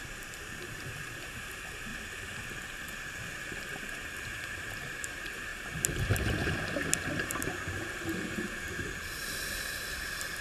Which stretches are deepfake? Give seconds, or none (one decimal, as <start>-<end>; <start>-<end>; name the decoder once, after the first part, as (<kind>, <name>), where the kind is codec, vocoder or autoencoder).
0.0-1.9 (vocoder, BigVGAN v2); 2.6-5.5; 7.2-10.4